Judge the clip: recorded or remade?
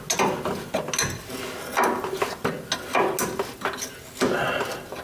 recorded